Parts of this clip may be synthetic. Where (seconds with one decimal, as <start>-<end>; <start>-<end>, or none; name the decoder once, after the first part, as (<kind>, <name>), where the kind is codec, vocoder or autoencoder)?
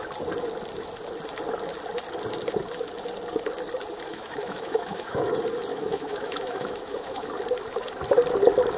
4.1-5.2 (autoencoder, DAC-VAE); 5.7-7.3